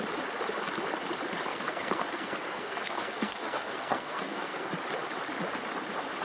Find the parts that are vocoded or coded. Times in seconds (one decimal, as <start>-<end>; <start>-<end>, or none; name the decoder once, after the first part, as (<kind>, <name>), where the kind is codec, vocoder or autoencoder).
1.5-4.7 (codec, SNAC)